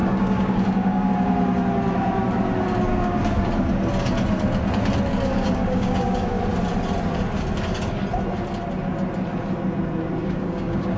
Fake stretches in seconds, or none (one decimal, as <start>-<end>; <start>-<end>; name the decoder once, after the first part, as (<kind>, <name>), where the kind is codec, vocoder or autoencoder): 0.0-1.1 (codec, DAC); 2.9-3.5; 5.1-6.4; 10.2-11.0